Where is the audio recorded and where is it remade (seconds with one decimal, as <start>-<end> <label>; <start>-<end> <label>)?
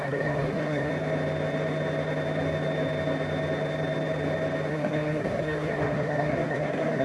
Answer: 0.0-0.9 remade; 0.9-4.7 recorded; 4.7-7.0 remade